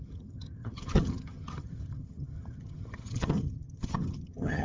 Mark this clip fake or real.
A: fake